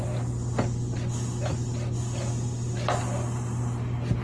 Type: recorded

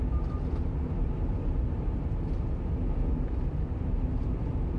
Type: recorded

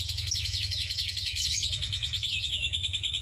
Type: remade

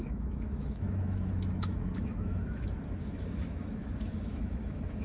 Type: remade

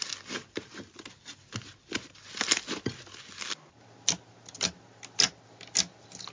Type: recorded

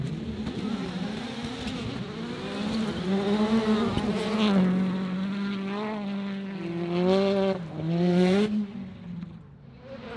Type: recorded